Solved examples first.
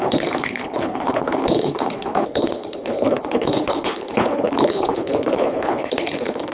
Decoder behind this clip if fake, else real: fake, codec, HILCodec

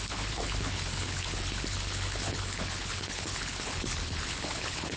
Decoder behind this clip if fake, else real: fake, codec, HILCodec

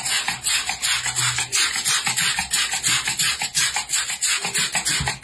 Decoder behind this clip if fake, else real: real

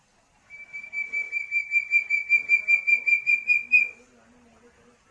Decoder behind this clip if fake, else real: real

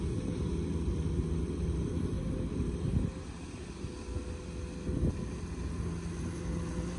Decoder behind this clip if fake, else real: real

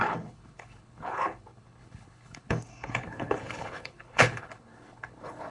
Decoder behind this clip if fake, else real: fake, codec, HILCodec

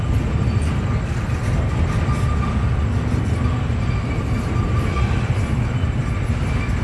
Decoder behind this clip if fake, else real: real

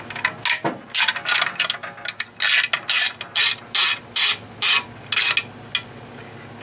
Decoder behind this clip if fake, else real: real